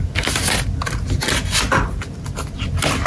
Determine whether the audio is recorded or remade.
recorded